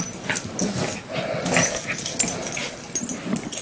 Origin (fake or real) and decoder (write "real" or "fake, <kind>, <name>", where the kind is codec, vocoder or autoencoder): real